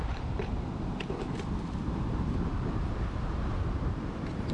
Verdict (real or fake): fake